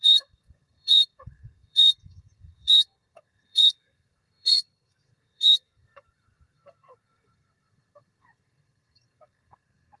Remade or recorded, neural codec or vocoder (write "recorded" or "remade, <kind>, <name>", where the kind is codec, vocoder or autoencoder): remade, codec, SNAC